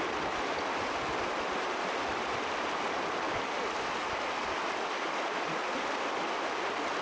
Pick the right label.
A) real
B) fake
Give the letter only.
A